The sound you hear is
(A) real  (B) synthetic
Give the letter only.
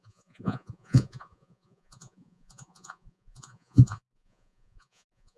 B